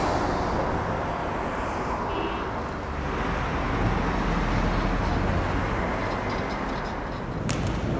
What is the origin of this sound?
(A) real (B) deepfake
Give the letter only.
A